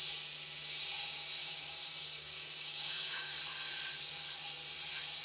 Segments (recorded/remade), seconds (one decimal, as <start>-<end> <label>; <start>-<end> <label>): 0.0-1.4 recorded; 1.4-3.4 remade; 3.4-5.2 recorded